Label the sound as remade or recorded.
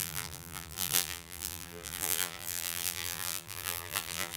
remade